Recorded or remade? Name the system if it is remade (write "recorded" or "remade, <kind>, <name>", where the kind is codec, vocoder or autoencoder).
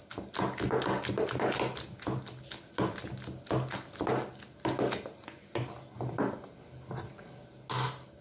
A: recorded